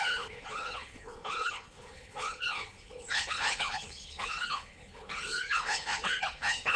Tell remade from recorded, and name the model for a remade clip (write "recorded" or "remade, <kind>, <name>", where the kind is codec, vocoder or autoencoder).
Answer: remade, codec, HILCodec